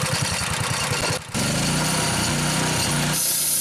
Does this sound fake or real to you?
real